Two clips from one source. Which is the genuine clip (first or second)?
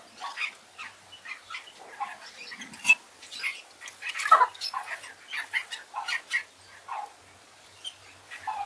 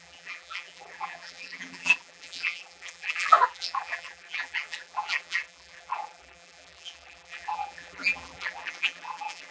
first